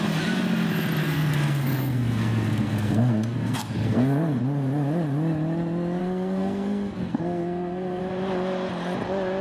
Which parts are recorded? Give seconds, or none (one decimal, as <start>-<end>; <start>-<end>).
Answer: 0.0-1.0; 4.4-6.0; 8.0-9.4